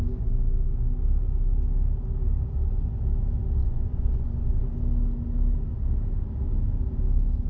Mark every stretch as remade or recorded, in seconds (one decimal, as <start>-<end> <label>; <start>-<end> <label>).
0.0-3.6 recorded; 3.6-4.6 remade; 4.6-7.5 recorded